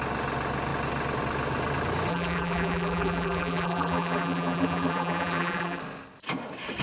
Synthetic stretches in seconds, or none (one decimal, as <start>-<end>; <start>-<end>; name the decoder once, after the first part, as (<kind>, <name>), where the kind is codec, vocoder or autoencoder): 2.1-5.8 (vocoder, BigVGAN v2)